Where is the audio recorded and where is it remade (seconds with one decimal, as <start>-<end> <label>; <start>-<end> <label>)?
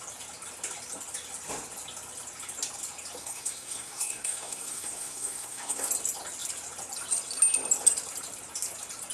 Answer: 0.0-3.2 recorded; 3.2-5.9 remade; 5.9-9.1 recorded